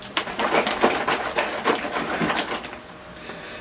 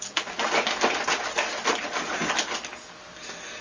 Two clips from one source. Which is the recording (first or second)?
second